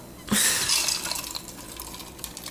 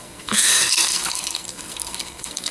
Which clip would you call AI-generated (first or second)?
second